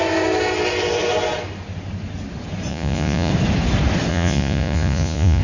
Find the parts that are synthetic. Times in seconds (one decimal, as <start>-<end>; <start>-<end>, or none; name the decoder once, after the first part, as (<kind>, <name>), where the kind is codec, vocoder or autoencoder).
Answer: 2.7-3.3 (vocoder, Vocos); 4.1-5.4